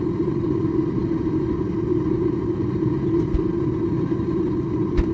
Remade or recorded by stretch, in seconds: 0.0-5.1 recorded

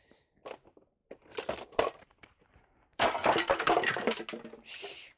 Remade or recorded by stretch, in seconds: 0.0-2.9 recorded; 2.9-4.2 remade; 4.2-5.2 recorded

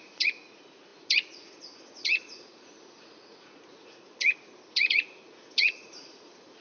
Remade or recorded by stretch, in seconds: 0.0-6.6 remade

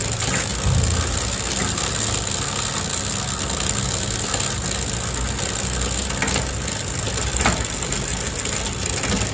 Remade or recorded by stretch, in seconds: 0.0-9.3 recorded